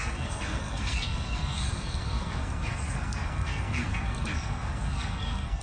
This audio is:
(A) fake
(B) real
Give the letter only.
A